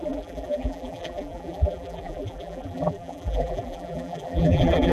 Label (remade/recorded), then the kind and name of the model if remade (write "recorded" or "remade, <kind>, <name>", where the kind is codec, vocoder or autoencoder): remade, vocoder, BigVGAN v2